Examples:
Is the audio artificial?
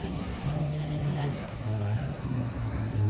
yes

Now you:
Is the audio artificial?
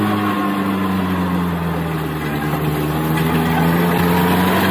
no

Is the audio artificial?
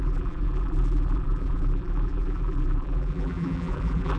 yes